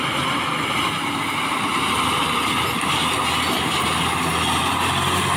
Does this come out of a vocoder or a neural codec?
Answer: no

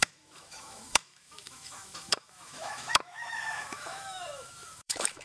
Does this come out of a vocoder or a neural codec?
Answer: yes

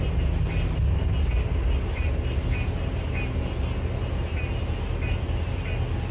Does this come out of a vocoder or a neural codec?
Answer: no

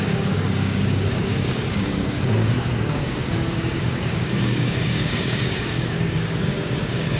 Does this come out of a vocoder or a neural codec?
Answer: yes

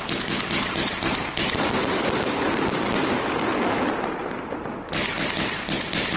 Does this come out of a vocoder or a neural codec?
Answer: no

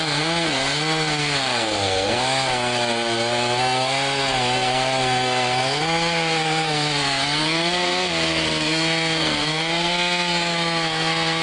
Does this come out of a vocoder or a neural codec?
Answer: yes